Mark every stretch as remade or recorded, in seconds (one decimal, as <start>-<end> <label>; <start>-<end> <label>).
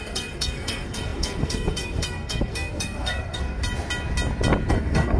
0.0-3.6 remade; 3.6-4.7 recorded; 4.7-5.2 remade